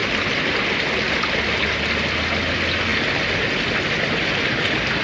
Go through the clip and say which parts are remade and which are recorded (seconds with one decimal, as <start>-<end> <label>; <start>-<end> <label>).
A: 0.0-5.0 recorded